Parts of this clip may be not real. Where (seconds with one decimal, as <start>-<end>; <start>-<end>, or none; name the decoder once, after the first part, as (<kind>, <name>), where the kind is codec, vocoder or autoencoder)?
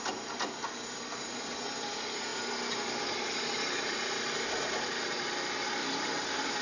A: 5.8-6.6 (vocoder, BigVGAN v2)